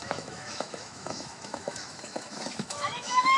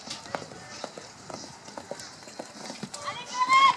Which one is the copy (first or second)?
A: first